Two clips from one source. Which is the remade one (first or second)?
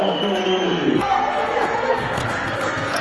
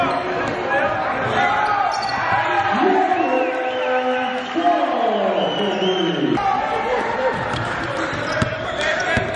first